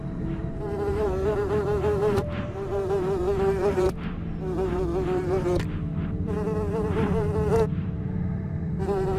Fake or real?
fake